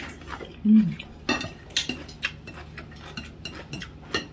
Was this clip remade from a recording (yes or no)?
no